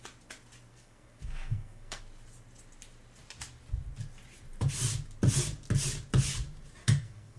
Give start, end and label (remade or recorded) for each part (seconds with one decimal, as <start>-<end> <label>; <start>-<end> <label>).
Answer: 0.0-0.7 recorded; 0.7-2.0 remade; 2.0-6.8 recorded; 6.8-7.4 remade